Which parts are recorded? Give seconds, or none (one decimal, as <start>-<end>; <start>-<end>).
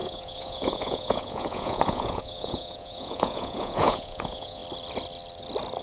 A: 4.6-5.8